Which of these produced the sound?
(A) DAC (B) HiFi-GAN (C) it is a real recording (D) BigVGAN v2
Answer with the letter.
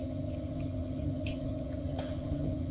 B